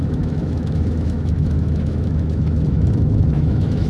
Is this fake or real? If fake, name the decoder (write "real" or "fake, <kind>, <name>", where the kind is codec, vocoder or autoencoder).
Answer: fake, autoencoder, DAC-VAE